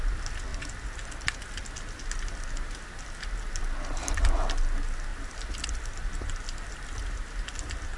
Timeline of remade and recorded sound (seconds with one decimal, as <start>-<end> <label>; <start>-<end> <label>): 0.0-8.0 recorded